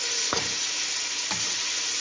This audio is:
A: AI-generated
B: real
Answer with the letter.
B